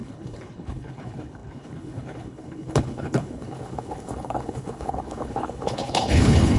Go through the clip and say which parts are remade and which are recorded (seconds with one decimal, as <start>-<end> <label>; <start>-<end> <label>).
0.0-6.6 remade